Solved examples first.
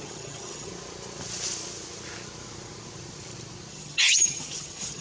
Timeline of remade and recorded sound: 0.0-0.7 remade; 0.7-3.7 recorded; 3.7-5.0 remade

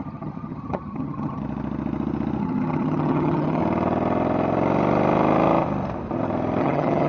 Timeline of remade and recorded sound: 0.0-1.4 remade; 1.4-2.4 recorded; 2.4-3.6 remade; 3.6-6.6 recorded; 6.6-7.1 remade

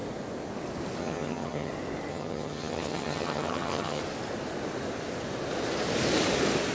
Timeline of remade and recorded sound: 0.0-1.0 recorded; 1.0-1.7 remade; 1.7-2.1 recorded; 2.1-4.0 remade; 4.0-6.7 recorded

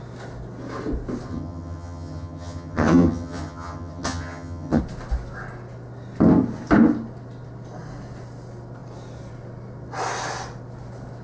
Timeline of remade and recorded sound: 0.0-1.3 recorded; 1.3-4.8 remade; 4.8-11.2 recorded

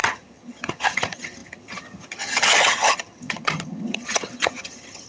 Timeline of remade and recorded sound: 0.0-5.1 remade

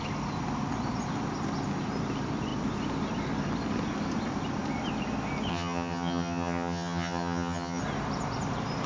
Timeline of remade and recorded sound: 0.0-5.5 recorded; 5.5-7.8 remade; 7.8-8.9 recorded